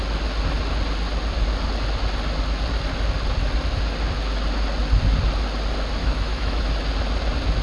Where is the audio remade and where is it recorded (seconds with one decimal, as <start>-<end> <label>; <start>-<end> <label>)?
0.0-6.0 recorded; 6.0-6.6 remade; 6.6-7.6 recorded